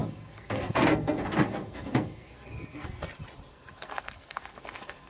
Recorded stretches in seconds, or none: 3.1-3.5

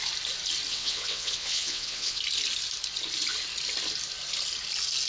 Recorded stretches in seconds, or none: 0.0-0.7; 2.2-5.1